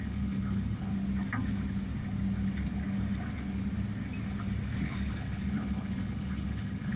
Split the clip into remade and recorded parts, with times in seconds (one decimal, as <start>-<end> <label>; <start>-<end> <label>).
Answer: 0.0-0.9 remade; 0.9-5.1 recorded; 5.1-7.0 remade